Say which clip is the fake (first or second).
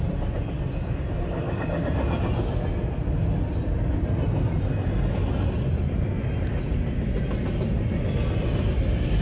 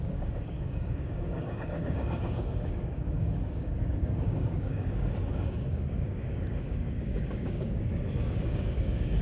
second